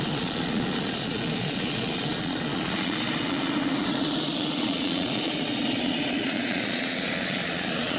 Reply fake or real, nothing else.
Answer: fake